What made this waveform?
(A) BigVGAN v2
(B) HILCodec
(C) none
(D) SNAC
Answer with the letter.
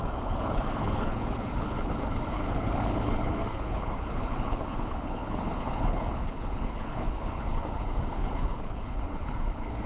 B